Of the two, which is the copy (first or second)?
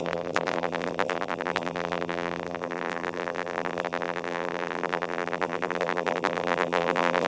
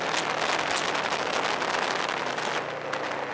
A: first